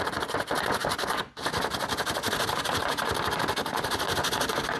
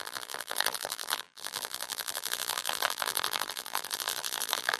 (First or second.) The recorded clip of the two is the first